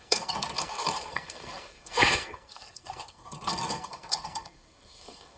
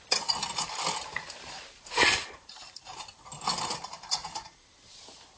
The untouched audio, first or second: second